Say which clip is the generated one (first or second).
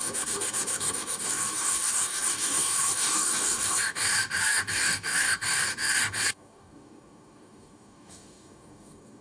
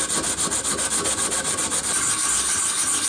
first